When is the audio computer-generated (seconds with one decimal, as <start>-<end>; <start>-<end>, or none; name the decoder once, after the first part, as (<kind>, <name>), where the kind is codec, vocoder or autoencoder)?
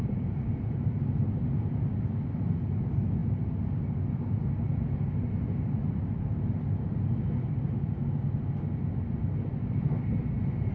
none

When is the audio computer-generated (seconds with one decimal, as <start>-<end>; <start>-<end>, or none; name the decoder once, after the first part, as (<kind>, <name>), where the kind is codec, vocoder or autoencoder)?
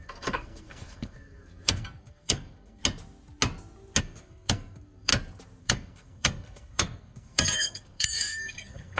0.0-2.8 (codec, SNAC); 4.0-5.1; 5.6-9.0